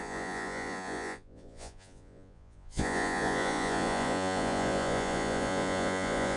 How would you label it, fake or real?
fake